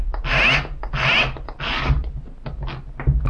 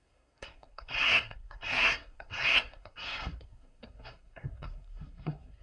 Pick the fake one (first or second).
second